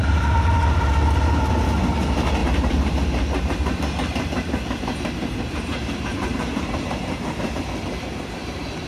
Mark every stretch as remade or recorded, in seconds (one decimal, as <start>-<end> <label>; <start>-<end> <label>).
0.0-1.2 remade; 1.2-2.4 recorded; 2.4-7.6 remade; 7.6-8.9 recorded